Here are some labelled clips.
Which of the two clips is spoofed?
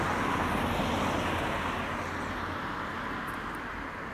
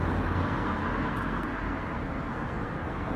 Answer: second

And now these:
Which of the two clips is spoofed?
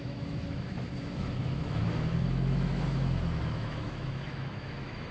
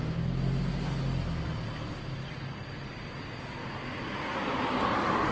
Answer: first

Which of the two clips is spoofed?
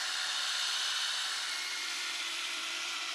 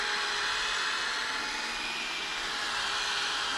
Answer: first